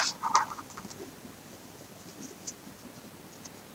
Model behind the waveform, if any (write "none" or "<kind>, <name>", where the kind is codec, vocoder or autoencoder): none